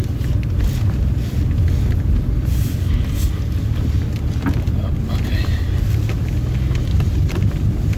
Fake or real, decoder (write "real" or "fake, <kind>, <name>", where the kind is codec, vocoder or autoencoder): real